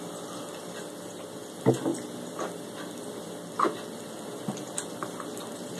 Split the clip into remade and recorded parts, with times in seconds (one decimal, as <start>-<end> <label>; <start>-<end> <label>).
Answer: 0.0-5.8 recorded